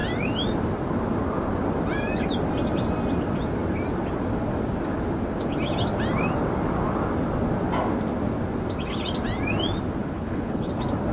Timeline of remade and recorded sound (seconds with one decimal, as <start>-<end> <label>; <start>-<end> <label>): 0.0-10.0 recorded; 10.0-10.7 remade; 10.7-11.1 recorded